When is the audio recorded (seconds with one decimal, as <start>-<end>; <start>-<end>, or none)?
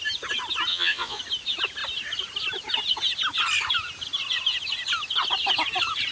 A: 0.0-0.7; 1.2-6.1